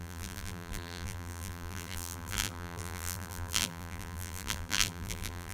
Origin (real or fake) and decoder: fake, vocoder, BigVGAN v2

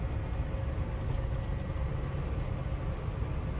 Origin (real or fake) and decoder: real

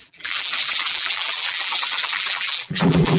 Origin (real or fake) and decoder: fake, vocoder, BigVGAN v2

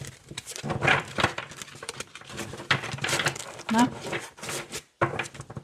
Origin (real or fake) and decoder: fake, vocoder, BigVGAN v2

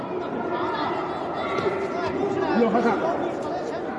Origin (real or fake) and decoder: real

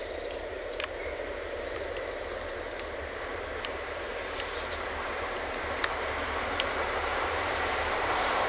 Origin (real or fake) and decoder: fake, vocoder, BigVGAN v2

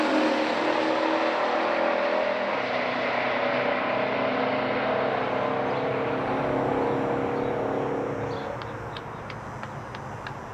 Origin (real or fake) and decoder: real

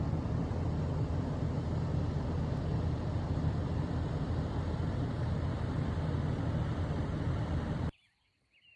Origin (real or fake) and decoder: fake, vocoder, BigVGAN v2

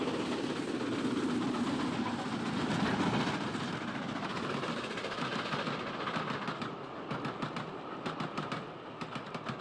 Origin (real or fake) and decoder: real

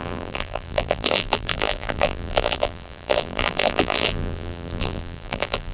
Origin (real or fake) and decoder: fake, vocoder, BigVGAN v2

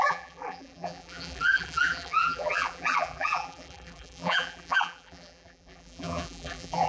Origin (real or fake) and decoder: fake, vocoder, BigVGAN v2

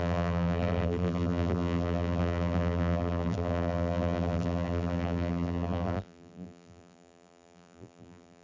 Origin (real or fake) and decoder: fake, vocoder, BigVGAN v2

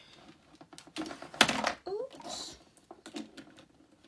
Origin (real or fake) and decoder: real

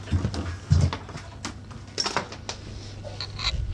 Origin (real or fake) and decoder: real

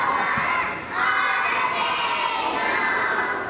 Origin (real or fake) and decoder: real